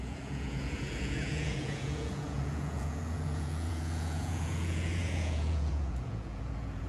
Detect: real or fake fake